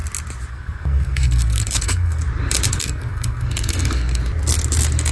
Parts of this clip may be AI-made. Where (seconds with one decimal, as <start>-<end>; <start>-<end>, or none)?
0.5-2.2; 2.7-4.2